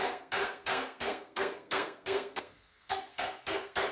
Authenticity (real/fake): fake